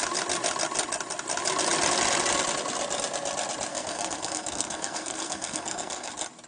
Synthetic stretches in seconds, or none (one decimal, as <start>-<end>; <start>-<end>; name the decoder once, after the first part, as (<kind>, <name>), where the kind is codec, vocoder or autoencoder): 3.7-6.1 (codec, SNAC)